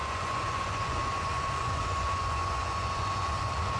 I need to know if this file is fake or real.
fake